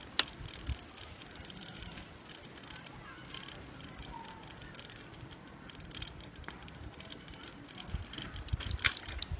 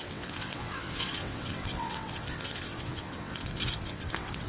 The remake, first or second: second